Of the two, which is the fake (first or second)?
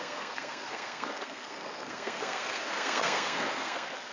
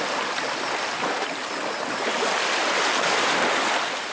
first